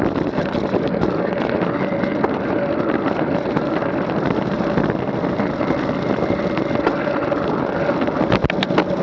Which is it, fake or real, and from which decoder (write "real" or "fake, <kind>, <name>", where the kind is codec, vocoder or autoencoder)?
real